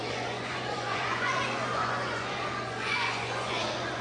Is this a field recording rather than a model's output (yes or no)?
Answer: no